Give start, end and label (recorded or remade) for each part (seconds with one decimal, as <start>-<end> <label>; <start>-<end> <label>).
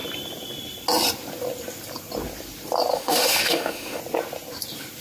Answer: 0.0-2.9 recorded; 2.9-4.0 remade; 4.0-5.0 recorded